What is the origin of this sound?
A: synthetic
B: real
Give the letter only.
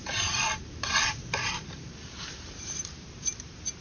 A